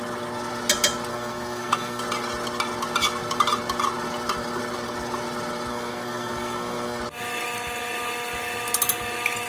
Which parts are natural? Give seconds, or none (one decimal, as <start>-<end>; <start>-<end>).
0.0-1.1; 2.0-5.7; 7.0-9.5